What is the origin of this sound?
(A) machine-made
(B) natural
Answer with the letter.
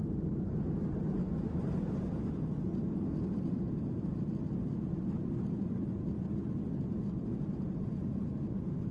B